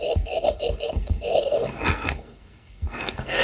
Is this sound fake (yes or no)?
yes